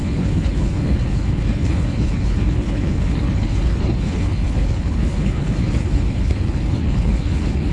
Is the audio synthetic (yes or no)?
yes